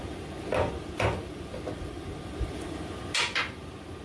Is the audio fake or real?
real